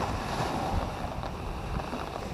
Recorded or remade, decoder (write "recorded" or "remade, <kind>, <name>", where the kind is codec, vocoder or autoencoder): recorded